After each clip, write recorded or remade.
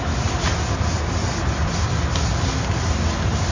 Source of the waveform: recorded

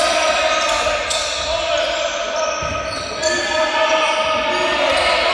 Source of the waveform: recorded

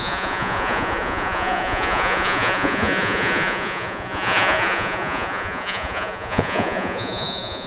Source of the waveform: remade